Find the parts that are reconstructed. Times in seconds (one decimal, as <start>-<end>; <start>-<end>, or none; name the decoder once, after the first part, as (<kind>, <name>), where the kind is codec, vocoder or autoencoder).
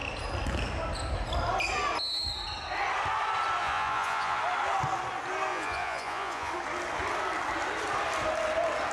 3.6-4.4 (vocoder, Vocos); 5.5-6.5